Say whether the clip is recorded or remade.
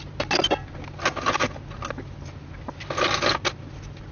recorded